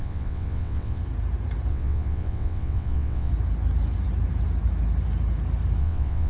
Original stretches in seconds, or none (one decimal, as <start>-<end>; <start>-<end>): 1.0-1.7; 3.3-5.8